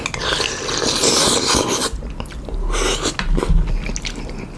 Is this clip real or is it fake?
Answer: real